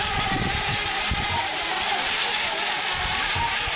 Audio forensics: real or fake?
fake